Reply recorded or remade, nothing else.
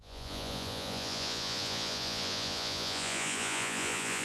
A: remade